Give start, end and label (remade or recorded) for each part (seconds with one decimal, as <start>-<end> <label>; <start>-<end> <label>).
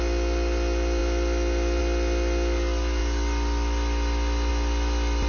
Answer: 0.0-5.3 recorded